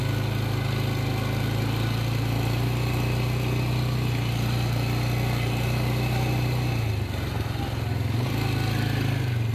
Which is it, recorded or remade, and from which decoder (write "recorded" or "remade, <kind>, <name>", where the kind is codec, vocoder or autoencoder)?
recorded